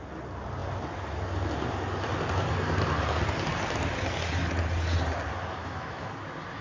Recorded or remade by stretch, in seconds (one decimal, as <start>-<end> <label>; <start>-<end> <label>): 0.0-5.6 recorded; 5.6-6.1 remade; 6.1-6.6 recorded